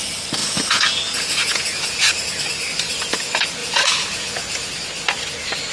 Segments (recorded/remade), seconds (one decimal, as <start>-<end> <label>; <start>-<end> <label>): 0.0-0.4 recorded; 0.4-2.1 remade; 2.1-3.6 recorded; 3.6-4.7 remade; 4.7-5.7 recorded